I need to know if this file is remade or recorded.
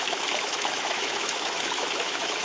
remade